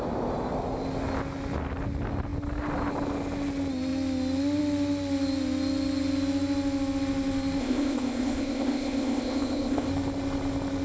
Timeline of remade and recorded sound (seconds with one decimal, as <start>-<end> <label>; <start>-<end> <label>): 0.0-7.6 recorded; 7.6-9.9 remade; 9.9-10.8 recorded